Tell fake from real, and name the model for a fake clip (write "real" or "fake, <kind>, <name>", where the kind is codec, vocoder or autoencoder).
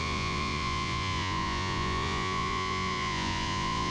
fake, vocoder, Vocos